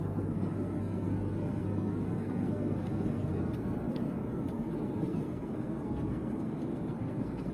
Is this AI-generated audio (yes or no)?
yes